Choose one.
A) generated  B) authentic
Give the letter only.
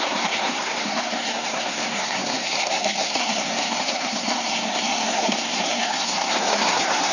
A